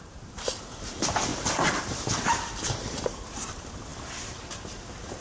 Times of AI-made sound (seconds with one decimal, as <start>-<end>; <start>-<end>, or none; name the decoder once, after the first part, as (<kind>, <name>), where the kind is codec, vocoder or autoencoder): 0.0-1.3 (vocoder, BigVGAN v2); 1.8-5.2